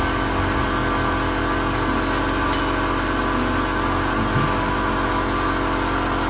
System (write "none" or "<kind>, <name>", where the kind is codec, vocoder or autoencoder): none